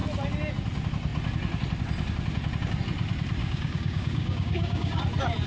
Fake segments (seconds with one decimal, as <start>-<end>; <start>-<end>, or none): 3.4-5.0